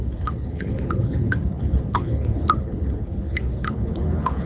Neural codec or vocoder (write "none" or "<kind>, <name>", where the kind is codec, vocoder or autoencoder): codec, HILCodec